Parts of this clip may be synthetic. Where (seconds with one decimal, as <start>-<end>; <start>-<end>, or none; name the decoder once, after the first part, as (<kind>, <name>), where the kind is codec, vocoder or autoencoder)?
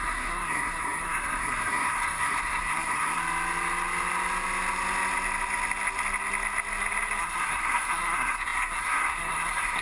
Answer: 0.0-3.2 (codec, SNAC); 7.2-9.8